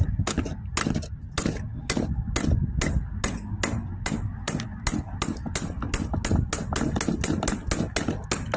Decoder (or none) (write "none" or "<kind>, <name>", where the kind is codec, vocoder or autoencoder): none